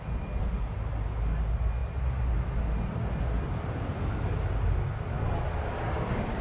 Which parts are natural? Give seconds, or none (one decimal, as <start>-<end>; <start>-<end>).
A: 0.0-1.8; 5.6-6.4